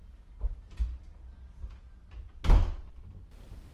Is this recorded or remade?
recorded